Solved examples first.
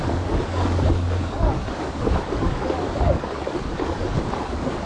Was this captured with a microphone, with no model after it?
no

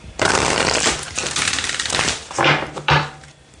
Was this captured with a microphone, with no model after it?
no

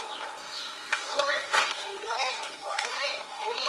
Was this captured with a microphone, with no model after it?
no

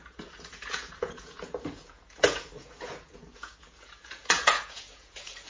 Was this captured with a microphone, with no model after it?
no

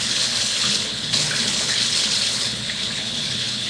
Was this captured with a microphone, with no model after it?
no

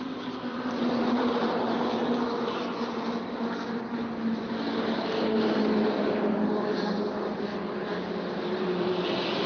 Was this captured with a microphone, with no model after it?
yes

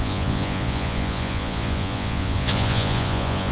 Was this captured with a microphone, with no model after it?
no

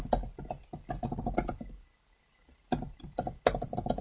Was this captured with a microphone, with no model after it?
yes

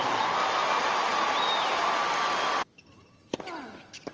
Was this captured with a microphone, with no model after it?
yes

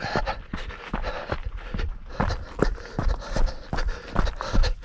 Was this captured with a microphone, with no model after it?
yes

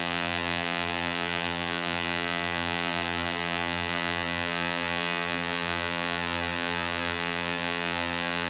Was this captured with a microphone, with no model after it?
no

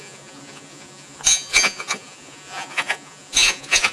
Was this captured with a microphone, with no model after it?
no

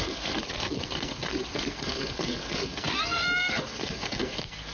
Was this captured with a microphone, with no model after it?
no